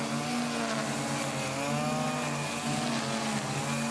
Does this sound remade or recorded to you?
recorded